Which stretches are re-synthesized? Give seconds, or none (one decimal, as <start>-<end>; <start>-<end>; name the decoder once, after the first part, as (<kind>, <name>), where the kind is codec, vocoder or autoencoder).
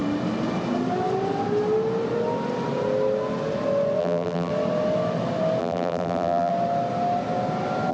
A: 4.0-4.5 (vocoder, BigVGAN v2); 5.6-6.5